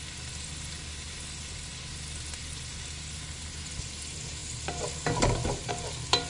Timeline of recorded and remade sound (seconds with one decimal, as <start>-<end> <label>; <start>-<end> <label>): 0.0-6.3 recorded